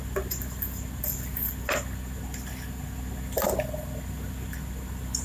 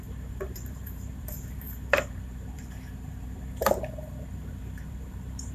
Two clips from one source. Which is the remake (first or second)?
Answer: second